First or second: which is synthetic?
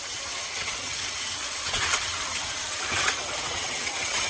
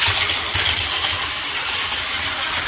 first